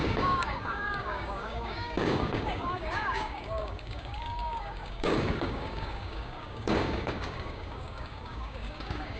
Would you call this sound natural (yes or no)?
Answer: no